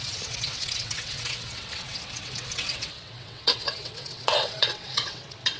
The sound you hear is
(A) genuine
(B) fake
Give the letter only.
B